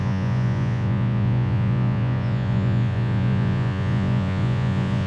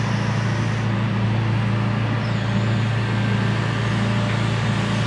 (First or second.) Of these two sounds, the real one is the second